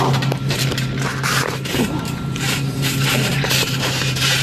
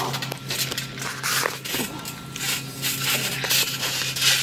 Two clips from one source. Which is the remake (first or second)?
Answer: first